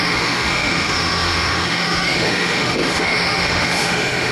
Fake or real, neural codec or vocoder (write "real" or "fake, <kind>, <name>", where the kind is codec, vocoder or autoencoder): fake, autoencoder, DAC-VAE